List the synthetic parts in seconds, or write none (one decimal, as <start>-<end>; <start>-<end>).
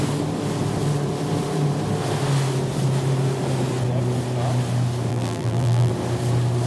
5.1-5.9